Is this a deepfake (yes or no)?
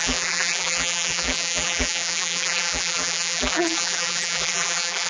yes